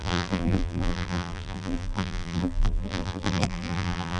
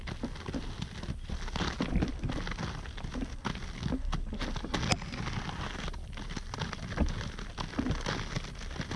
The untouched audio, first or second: second